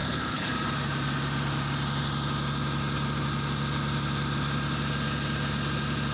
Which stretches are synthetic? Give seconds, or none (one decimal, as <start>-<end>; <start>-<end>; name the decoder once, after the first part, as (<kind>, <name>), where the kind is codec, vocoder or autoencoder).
0.0-0.5 (codec, HILCodec)